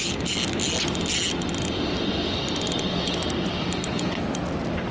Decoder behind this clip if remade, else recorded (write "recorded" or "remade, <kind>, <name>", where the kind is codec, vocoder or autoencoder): recorded